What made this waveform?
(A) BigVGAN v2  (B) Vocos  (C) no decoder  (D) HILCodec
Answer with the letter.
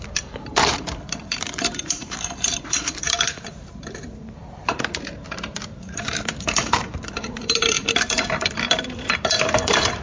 A